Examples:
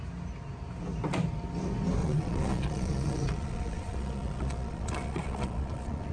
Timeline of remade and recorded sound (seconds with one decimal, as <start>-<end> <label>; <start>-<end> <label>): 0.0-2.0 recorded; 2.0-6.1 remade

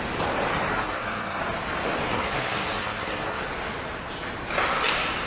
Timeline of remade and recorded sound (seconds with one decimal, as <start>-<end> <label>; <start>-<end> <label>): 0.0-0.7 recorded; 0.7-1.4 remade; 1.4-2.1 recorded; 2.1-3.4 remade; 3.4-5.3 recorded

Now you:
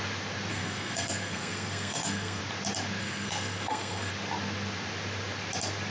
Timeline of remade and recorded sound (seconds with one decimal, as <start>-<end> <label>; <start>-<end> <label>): 0.0-0.5 recorded; 0.5-2.4 remade; 2.4-3.0 recorded; 3.0-4.1 remade; 4.1-5.9 recorded

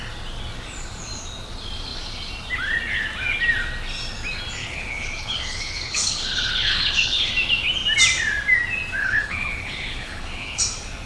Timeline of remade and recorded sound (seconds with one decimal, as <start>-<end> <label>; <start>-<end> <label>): 0.0-4.6 recorded; 4.6-7.3 remade; 7.3-9.0 recorded; 9.0-10.6 remade; 10.6-11.1 recorded

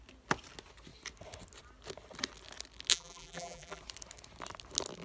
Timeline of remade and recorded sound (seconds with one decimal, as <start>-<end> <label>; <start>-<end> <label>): 0.0-2.9 recorded; 2.9-3.8 remade; 3.8-5.0 recorded